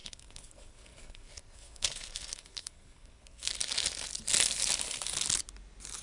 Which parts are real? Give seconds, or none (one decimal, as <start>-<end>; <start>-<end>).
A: 3.5-6.0